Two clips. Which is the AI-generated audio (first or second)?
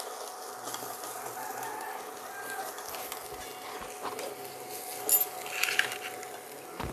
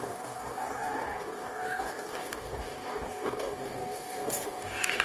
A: second